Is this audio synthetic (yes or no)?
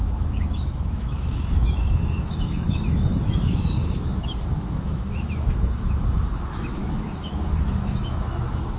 yes